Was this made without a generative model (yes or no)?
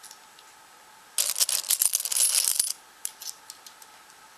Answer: yes